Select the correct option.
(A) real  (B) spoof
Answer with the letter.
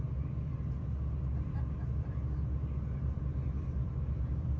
B